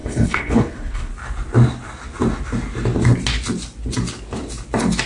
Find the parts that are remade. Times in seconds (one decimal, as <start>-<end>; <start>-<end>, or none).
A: 0.0-1.1